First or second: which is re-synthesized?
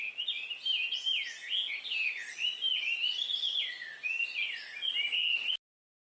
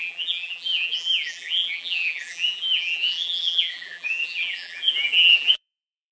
second